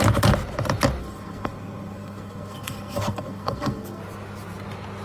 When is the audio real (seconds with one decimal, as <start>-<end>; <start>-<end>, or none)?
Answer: 0.0-1.0; 4.0-5.0